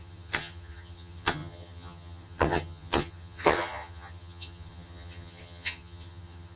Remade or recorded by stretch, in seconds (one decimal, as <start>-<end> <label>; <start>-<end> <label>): 0.0-6.6 remade